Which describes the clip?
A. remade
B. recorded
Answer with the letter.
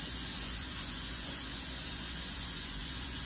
A